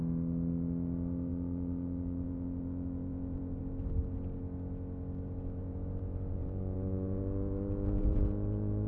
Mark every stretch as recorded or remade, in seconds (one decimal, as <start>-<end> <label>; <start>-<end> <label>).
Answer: 0.0-1.3 recorded; 1.3-3.6 remade; 3.6-5.6 recorded; 5.6-8.9 remade